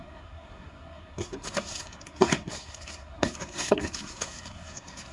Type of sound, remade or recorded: remade